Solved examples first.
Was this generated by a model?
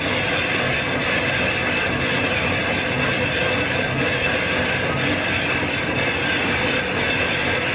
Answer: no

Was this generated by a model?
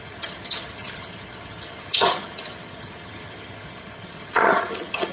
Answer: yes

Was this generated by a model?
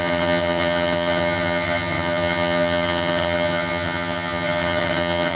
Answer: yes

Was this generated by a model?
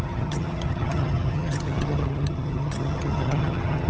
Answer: yes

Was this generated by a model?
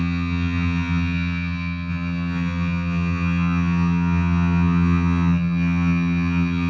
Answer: yes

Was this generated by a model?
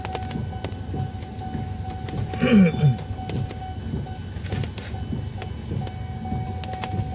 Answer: no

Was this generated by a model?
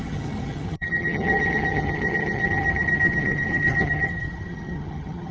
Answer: yes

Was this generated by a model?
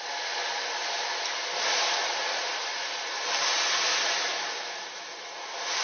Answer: no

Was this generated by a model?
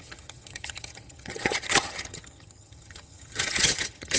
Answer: yes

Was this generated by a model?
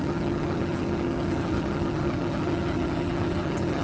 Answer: yes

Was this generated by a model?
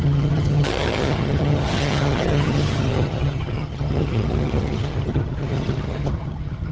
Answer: yes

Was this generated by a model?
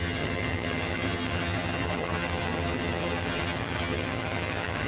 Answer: yes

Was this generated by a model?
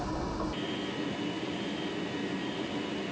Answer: no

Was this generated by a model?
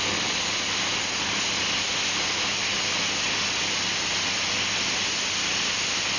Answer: no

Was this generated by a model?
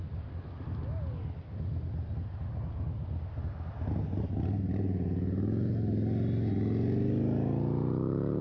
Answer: no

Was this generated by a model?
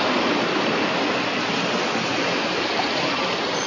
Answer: no